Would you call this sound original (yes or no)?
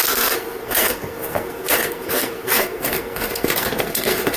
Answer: no